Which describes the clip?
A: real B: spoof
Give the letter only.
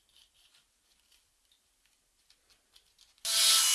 A